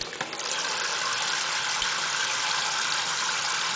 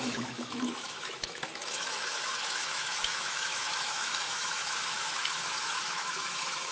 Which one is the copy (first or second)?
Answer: second